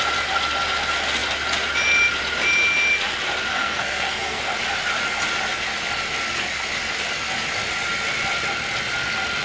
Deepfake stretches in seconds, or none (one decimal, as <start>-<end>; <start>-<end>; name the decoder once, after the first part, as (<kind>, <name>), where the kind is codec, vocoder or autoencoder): 3.5-4.4 (codec, SNAC)